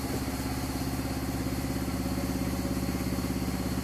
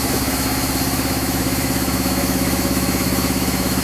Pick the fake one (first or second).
second